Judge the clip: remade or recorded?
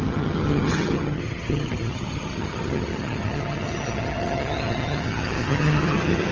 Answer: remade